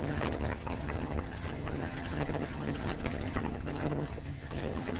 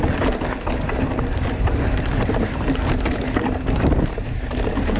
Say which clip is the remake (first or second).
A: first